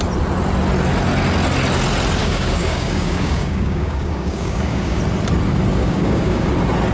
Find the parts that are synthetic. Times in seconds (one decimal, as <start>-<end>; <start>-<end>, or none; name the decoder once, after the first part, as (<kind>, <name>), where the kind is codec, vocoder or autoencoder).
2.2-5.0 (codec, DAC); 5.8-6.5